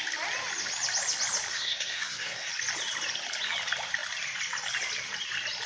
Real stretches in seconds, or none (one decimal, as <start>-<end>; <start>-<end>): 0.0-1.5; 2.5-5.7